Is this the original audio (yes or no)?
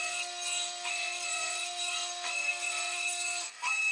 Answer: no